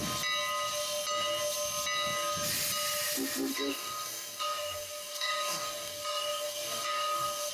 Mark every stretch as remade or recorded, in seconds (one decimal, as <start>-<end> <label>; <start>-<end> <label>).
0.0-3.5 recorded; 3.5-7.5 remade